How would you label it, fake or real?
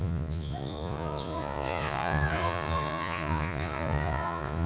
fake